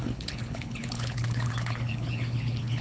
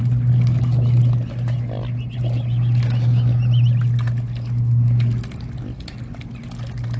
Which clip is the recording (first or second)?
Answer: second